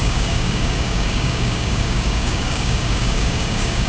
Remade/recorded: remade